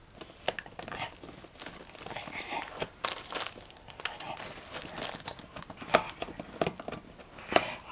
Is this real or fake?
real